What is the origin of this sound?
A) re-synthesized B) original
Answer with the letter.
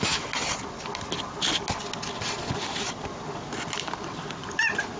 B